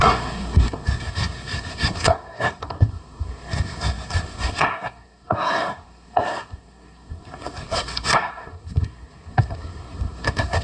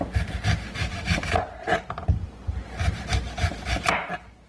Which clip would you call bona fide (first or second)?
second